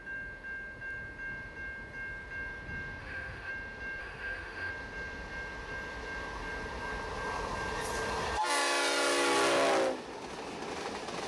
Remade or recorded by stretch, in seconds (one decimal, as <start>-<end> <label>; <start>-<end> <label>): 0.0-3.0 recorded; 3.0-3.5 remade; 3.5-4.0 recorded; 4.0-4.7 remade; 4.7-11.3 recorded